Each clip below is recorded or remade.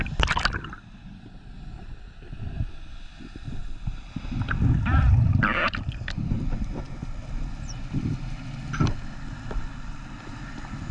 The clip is recorded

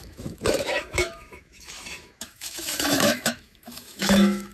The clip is remade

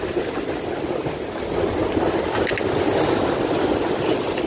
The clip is recorded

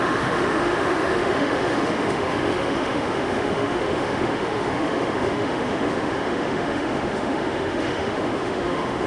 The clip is remade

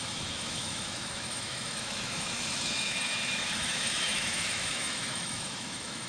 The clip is remade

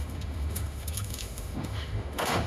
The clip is remade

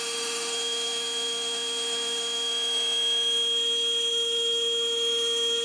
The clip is remade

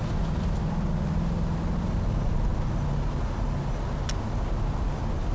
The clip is recorded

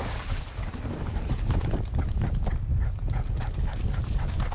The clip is recorded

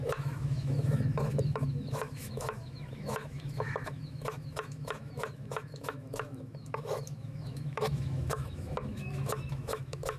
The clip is remade